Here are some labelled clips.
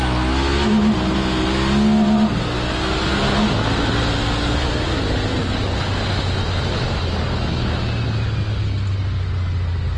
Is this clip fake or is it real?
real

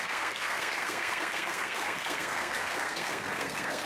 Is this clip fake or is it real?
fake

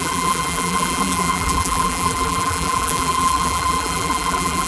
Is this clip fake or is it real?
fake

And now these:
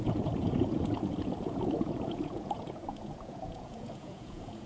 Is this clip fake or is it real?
fake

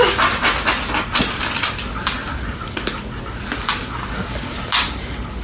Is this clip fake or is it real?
real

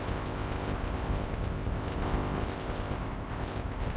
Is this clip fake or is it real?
fake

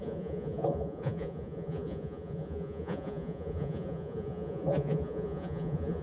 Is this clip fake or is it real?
fake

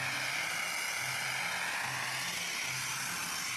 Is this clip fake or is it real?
real